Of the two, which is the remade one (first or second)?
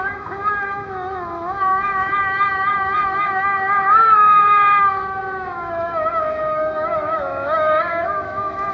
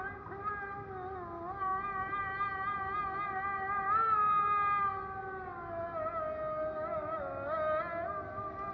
first